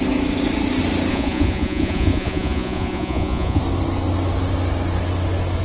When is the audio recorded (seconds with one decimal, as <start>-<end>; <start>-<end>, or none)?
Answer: 0.0-1.1; 3.6-5.6